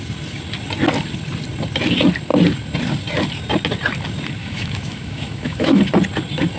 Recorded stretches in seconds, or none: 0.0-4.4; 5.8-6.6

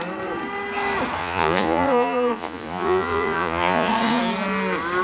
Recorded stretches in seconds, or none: 0.0-1.2; 4.2-5.0

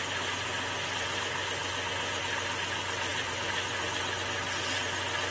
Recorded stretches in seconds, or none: 0.0-3.1; 4.0-5.3

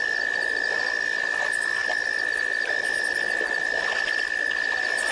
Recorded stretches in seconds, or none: 0.0-5.1

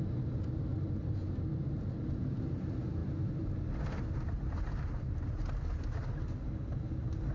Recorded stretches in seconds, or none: 0.0-7.3

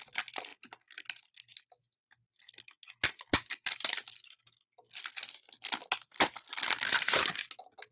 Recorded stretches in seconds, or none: 0.0-7.9